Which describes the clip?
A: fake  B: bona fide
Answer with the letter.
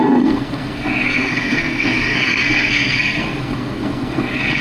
A